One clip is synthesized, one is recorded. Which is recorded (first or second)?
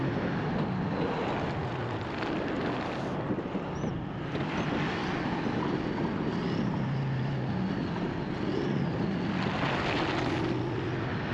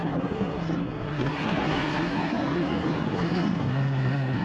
first